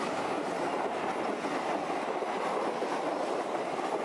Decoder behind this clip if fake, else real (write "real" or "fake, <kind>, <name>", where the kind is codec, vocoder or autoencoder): real